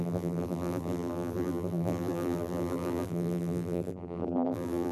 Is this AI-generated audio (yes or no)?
yes